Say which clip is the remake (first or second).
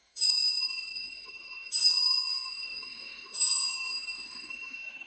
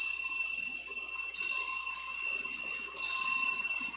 first